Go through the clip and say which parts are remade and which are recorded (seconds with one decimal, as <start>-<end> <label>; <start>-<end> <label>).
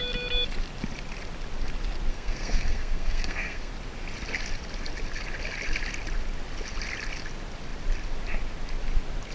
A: 0.0-2.1 recorded; 2.1-3.7 remade; 3.7-9.3 recorded